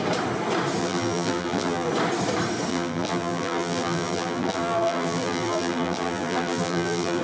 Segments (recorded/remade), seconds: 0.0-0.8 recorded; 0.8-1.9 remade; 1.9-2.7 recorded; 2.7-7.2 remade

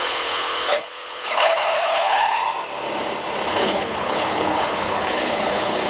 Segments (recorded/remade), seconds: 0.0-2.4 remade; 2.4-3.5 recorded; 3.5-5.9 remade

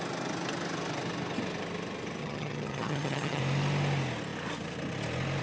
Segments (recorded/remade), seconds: 0.0-2.2 recorded; 2.2-3.4 remade; 3.4-5.4 recorded